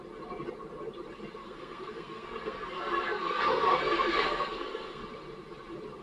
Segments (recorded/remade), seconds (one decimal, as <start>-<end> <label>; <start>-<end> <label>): 0.0-1.4 recorded; 1.4-5.0 remade; 5.0-6.0 recorded